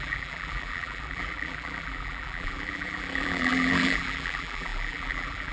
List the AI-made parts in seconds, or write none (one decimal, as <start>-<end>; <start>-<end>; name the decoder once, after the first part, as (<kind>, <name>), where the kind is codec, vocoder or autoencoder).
0.0-5.5 (vocoder, BigVGAN v2)